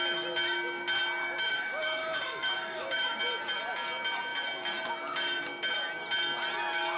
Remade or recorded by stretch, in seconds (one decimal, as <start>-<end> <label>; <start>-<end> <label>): 0.0-1.2 recorded; 1.2-3.2 remade; 3.2-7.0 recorded